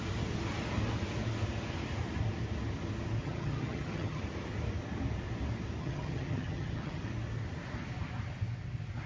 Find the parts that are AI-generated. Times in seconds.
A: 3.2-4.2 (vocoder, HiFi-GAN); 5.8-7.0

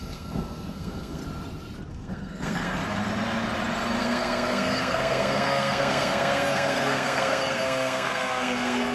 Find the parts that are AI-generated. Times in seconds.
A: 0.0-1.2 (codec, SNAC); 1.9-2.8; 4.0-8.9

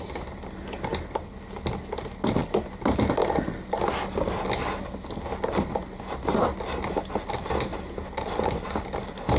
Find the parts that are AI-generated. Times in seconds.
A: none

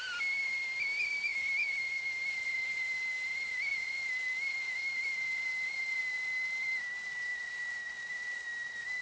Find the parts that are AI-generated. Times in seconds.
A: 1.3-2.8 (vocoder, BigVGAN v2); 3.7-6.0; 7.3-9.0

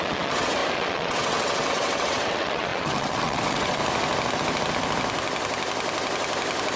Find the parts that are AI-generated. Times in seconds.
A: 0.0-3.8 (vocoder, WaveNeXt)

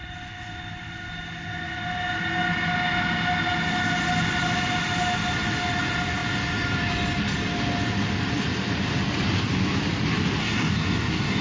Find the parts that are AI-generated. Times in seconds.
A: 10.4-11.4 (codec, DAC)

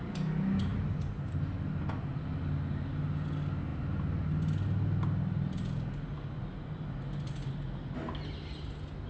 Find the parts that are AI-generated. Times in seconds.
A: none

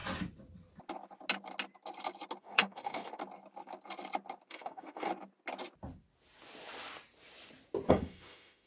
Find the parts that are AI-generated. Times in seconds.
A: 2.4-3.2 (autoencoder, DAC-VAE); 4.5-5.1; 7.9-8.7